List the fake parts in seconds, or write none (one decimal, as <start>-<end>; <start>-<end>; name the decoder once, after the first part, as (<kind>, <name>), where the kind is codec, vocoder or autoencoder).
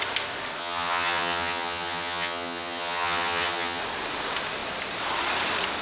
0.6-3.8 (vocoder, HiFi-GAN)